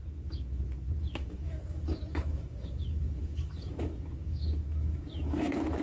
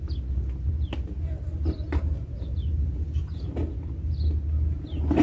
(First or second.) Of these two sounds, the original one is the second